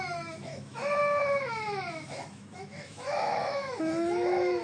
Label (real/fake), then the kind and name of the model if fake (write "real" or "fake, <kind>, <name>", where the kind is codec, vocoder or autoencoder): fake, autoencoder, DAC-VAE